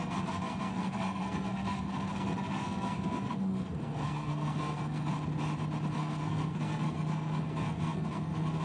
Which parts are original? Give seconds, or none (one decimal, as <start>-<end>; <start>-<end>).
5.1-5.9